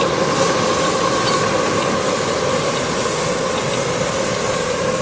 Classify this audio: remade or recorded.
recorded